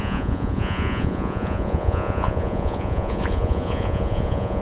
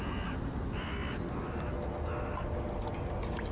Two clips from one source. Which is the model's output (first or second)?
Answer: first